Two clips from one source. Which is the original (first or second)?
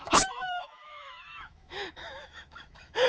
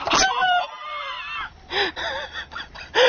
second